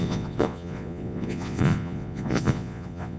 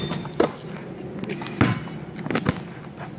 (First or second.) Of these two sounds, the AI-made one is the first